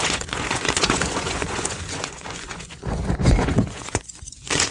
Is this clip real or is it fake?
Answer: fake